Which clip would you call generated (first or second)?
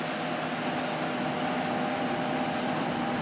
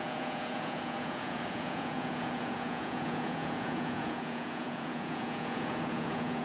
second